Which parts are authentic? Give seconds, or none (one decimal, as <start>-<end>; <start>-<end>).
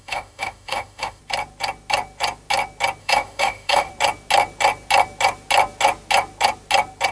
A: 1.2-3.0; 3.9-7.1